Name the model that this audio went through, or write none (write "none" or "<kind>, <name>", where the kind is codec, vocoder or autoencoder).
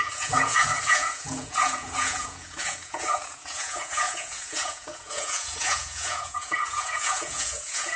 vocoder, Vocos